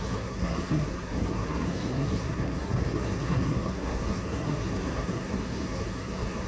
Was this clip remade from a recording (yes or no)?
yes